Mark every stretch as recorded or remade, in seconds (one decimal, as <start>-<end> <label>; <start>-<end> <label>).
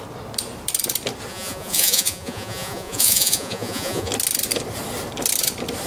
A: 0.0-1.3 recorded; 1.3-4.1 remade; 4.1-5.9 recorded